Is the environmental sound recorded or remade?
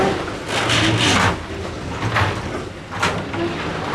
recorded